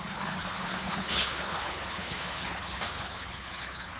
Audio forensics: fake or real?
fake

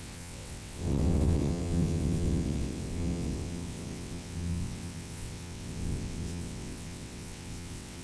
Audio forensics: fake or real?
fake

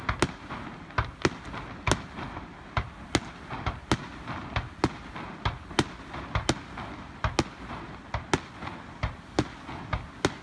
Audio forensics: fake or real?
real